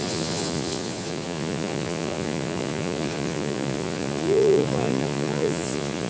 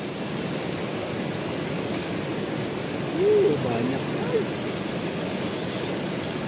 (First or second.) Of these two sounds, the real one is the second